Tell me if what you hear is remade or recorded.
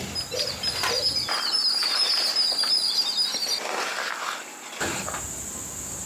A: recorded